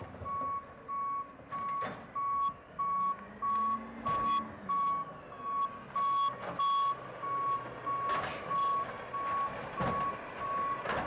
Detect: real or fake real